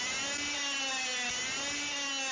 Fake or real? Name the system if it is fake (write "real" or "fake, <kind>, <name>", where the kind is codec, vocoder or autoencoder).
real